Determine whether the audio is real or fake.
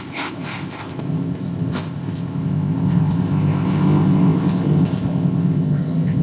fake